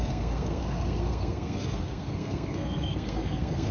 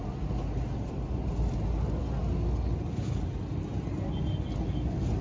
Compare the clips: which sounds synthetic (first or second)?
first